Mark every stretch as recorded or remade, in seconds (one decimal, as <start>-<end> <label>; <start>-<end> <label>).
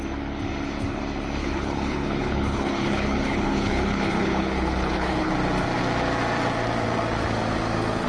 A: 0.0-1.4 recorded; 1.4-5.3 remade; 5.3-8.1 recorded